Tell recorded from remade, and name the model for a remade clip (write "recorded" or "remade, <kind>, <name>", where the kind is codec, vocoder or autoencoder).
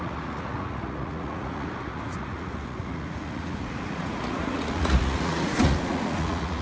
remade, vocoder, Vocos